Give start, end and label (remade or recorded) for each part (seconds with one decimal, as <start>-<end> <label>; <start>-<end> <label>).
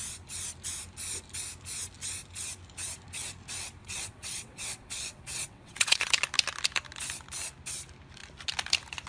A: 0.0-3.8 recorded; 3.8-6.1 remade; 6.1-9.1 recorded